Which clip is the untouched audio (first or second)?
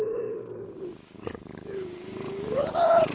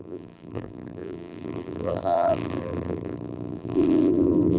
first